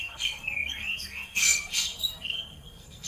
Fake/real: fake